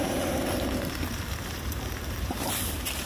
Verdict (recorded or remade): remade